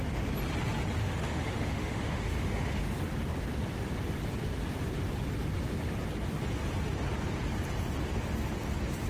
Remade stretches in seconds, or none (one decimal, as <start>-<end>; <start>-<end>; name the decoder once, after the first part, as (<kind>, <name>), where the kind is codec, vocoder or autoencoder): 1.0-2.8 (autoencoder, DAC-VAE)